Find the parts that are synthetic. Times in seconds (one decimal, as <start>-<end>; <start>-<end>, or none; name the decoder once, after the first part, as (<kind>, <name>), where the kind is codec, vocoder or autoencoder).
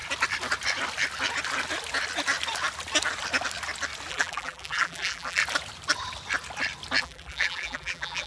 4.1-5.4 (vocoder, BigVGAN v2); 7.0-8.3